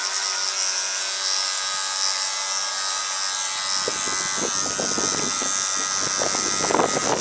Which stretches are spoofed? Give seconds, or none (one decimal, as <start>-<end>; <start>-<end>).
none